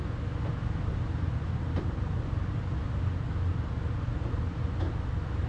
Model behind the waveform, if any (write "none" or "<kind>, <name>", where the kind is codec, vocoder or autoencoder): none